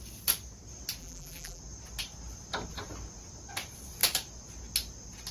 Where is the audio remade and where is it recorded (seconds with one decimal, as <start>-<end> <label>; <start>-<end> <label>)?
0.0-1.0 recorded; 1.0-1.6 remade; 1.6-5.3 recorded